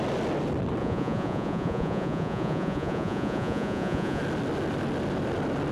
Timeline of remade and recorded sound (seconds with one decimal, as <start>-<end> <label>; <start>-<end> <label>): 0.0-0.8 recorded; 0.8-4.2 remade; 4.2-5.7 recorded